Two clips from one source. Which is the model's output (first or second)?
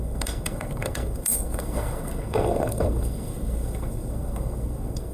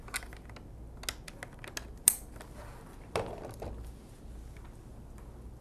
first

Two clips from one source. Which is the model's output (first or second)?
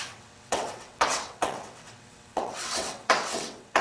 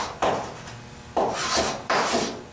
first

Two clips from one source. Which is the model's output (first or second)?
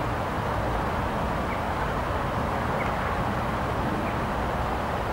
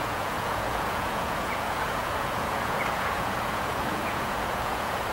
second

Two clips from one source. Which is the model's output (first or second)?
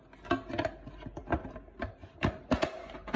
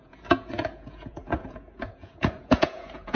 second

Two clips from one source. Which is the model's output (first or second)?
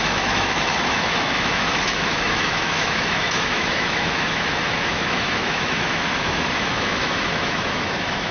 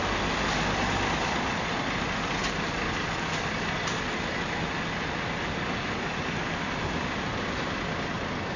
first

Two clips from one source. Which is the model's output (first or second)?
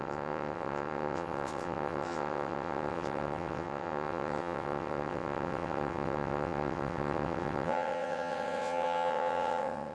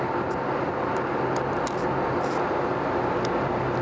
first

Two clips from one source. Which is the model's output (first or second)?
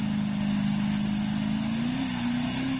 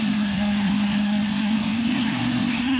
second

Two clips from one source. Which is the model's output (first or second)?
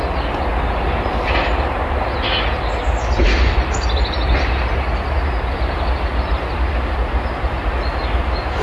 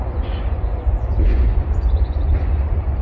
second